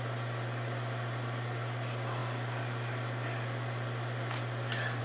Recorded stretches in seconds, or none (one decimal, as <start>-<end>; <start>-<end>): 0.0-5.0